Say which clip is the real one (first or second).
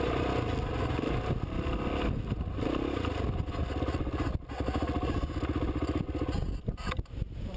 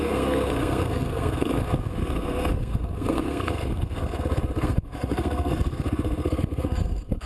first